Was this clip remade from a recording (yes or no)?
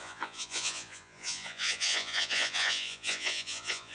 yes